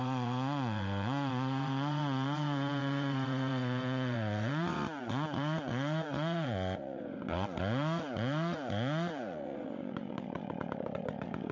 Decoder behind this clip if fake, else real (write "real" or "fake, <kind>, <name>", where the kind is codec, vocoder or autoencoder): fake, vocoder, Vocos